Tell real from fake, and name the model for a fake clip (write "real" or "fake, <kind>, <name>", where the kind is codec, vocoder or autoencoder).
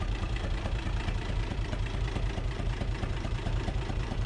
fake, vocoder, BigVGAN v2